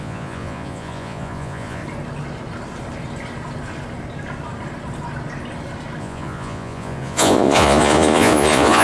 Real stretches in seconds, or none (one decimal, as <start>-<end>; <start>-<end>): 1.8-6.0